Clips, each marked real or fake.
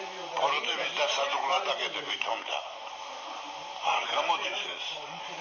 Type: fake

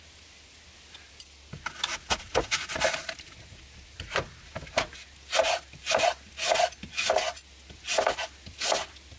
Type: real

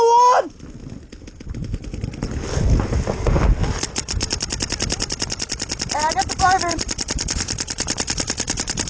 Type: real